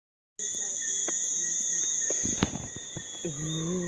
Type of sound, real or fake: real